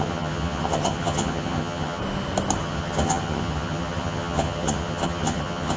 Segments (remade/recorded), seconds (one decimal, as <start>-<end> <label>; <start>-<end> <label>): 0.0-2.0 remade; 2.0-2.6 recorded; 2.6-5.8 remade